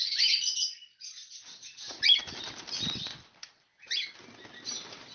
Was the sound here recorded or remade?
recorded